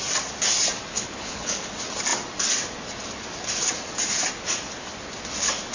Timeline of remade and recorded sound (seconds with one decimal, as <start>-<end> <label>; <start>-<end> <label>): 0.0-0.9 recorded; 0.9-1.7 remade; 1.7-5.7 recorded